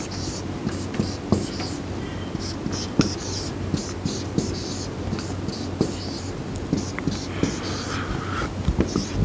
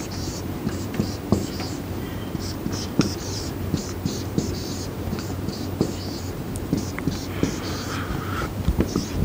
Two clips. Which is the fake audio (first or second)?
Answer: second